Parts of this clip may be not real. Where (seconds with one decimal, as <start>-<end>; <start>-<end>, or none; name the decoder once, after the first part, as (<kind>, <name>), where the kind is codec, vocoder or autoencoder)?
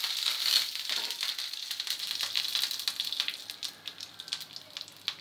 none